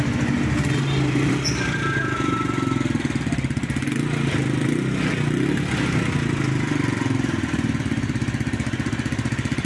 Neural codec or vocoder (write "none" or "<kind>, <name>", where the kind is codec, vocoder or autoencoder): none